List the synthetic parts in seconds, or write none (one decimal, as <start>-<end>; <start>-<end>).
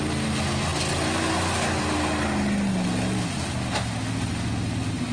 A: none